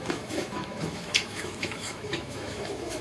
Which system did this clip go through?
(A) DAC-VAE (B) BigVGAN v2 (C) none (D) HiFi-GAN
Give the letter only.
A